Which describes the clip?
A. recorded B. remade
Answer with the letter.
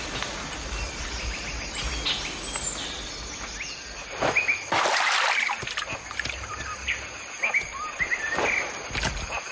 A